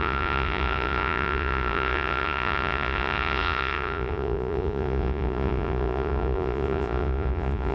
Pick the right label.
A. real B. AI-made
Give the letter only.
B